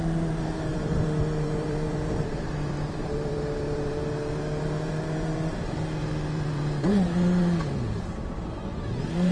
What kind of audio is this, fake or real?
fake